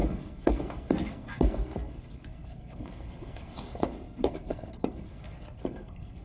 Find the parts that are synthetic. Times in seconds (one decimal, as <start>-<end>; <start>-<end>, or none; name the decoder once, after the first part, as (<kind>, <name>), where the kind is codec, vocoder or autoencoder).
0.0-6.2 (codec, SNAC)